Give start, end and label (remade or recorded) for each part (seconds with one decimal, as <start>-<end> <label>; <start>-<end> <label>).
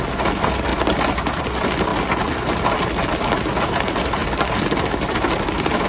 0.0-5.9 recorded